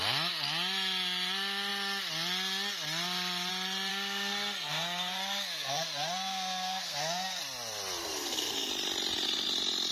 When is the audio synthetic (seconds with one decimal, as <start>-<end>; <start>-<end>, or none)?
3.9-7.4; 8.0-8.7